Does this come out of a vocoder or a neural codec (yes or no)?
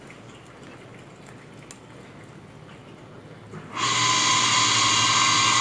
no